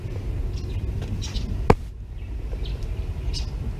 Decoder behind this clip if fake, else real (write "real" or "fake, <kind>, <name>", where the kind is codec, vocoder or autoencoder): real